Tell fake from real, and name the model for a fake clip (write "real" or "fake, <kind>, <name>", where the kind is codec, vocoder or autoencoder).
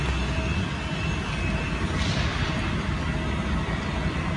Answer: fake, vocoder, BigVGAN v2